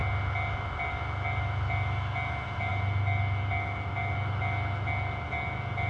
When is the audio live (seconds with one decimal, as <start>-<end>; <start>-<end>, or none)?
0.0-0.5